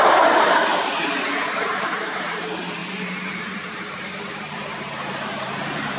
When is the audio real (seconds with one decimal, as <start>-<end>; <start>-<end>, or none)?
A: 0.6-1.5